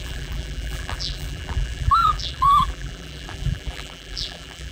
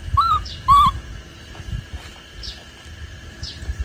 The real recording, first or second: second